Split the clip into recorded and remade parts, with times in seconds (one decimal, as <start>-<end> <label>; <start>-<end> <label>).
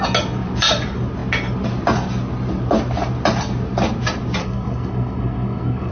0.0-4.4 recorded; 4.4-5.9 remade